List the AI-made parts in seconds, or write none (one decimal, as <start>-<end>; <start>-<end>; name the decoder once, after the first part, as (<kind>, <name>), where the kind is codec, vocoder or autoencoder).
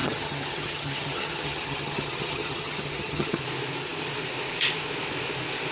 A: 0.0-3.4 (vocoder, HiFi-GAN)